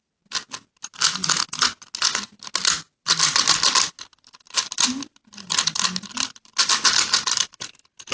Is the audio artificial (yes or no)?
no